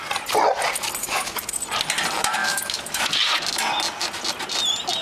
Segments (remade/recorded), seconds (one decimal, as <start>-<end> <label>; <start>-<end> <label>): 0.0-1.0 recorded; 1.0-1.6 remade; 1.6-2.4 recorded; 2.4-3.1 remade; 3.1-5.0 recorded